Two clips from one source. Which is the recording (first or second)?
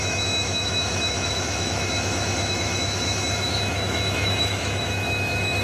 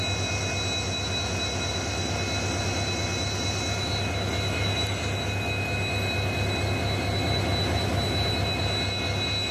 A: second